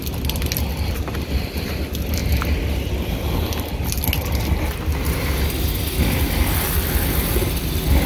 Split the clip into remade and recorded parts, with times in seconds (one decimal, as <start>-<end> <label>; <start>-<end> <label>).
0.0-8.1 recorded